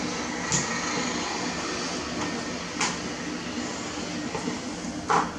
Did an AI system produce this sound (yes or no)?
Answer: no